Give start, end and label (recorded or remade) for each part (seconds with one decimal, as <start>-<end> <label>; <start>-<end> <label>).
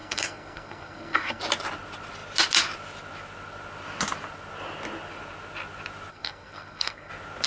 0.0-1.4 remade; 1.4-6.1 recorded; 6.1-7.1 remade; 7.1-7.5 recorded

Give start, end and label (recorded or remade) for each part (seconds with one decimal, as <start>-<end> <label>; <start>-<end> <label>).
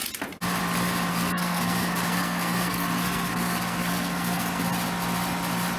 0.0-1.1 recorded; 1.1-4.6 remade; 4.6-5.8 recorded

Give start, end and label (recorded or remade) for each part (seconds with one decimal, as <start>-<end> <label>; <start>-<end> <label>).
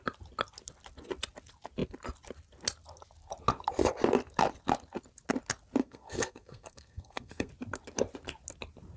0.0-5.8 recorded; 5.8-7.5 remade; 7.5-9.0 recorded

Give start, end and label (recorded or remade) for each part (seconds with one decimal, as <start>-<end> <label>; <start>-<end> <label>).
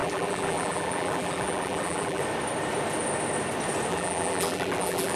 0.0-2.2 remade; 2.2-3.9 recorded; 3.9-5.2 remade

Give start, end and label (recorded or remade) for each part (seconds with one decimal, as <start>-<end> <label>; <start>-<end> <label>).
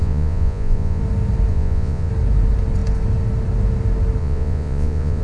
0.0-1.0 remade; 1.0-1.5 recorded; 1.5-2.1 remade; 2.1-4.2 recorded; 4.2-5.2 remade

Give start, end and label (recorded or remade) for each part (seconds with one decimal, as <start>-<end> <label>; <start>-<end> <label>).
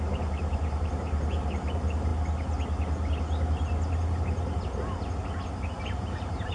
0.0-2.1 remade; 2.1-6.0 recorded; 6.0-6.5 remade